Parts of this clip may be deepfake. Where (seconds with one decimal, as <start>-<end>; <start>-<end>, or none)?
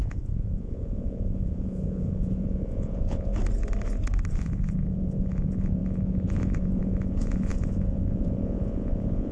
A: 0.0-3.3; 4.3-9.3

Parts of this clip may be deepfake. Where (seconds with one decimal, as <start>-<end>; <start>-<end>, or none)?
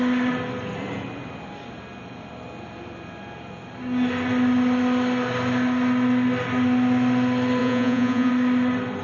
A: 7.6-8.3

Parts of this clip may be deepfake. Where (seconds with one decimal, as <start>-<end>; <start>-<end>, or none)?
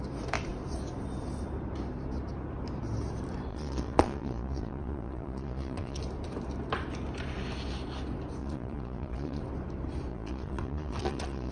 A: 3.5-6.0; 8.4-9.4; 10.1-11.5